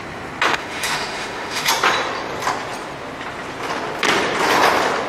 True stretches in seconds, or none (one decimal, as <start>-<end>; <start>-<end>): 0.0-0.5; 1.7-5.1